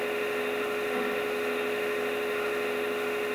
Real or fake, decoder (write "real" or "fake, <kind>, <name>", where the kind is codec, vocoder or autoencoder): fake, autoencoder, DAC-VAE